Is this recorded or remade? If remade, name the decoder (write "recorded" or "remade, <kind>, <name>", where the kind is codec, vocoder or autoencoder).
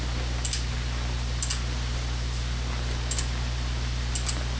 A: recorded